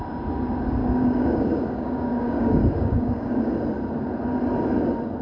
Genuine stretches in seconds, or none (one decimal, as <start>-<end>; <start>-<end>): 0.0-0.8; 3.4-5.2